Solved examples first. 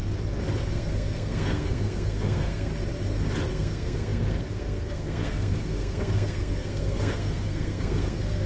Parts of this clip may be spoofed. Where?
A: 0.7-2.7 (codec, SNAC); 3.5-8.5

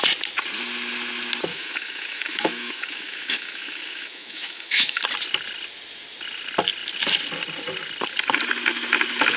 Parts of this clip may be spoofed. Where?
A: 1.5-5.0 (autoencoder, DAC-VAE)

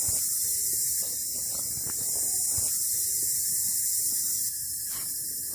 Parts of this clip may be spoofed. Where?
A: none

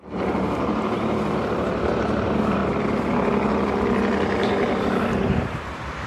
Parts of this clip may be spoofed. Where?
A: 0.0-2.6 (vocoder, BigVGAN v2); 4.8-6.1